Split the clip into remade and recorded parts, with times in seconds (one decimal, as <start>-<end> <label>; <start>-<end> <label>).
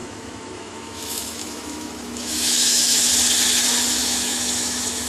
0.0-3.1 remade; 3.1-4.0 recorded; 4.0-5.1 remade